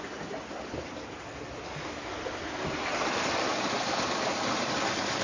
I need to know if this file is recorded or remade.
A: recorded